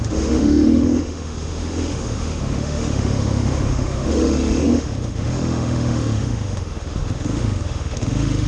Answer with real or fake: fake